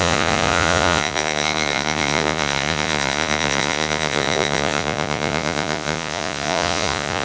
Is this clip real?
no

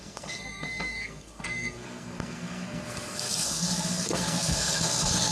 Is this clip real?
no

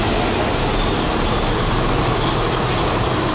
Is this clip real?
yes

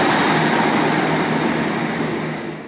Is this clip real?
yes